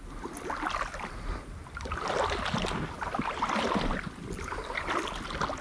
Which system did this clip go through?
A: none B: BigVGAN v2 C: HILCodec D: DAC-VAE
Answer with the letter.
A